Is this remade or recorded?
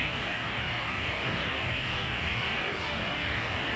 remade